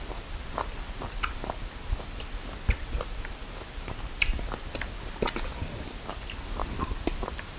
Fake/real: real